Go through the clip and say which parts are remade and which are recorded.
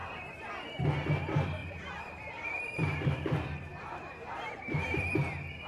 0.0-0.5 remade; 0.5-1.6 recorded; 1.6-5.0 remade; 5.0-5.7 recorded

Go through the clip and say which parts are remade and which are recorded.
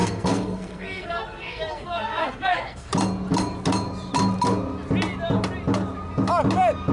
0.0-2.9 remade; 2.9-6.9 recorded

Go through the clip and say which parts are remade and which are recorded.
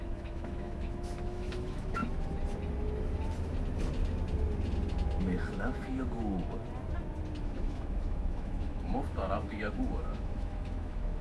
0.0-2.0 remade; 2.0-5.2 recorded; 5.2-6.6 remade; 6.6-7.4 recorded; 7.4-11.2 remade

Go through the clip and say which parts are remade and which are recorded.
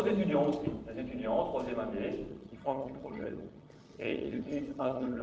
0.0-2.3 recorded; 2.3-5.2 remade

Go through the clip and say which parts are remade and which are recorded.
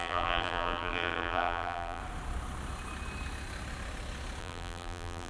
0.0-2.0 remade; 2.0-4.4 recorded; 4.4-5.3 remade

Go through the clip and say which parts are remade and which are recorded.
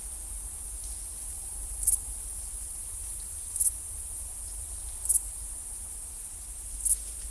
0.0-1.2 recorded; 1.2-4.2 remade; 4.2-7.3 recorded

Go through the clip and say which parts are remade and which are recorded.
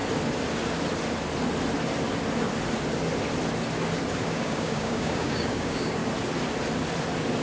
0.0-4.2 recorded; 4.2-6.0 remade; 6.0-7.4 recorded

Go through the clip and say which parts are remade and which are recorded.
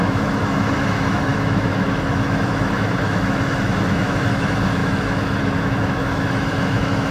0.0-7.1 remade